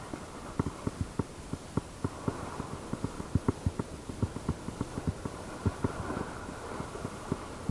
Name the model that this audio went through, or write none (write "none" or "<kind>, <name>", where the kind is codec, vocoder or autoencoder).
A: none